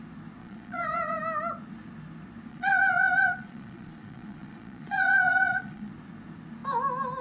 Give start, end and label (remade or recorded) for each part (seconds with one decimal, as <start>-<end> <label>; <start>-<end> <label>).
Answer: 0.0-0.4 recorded; 0.4-1.2 remade; 1.2-2.5 recorded; 2.5-5.9 remade; 5.9-7.2 recorded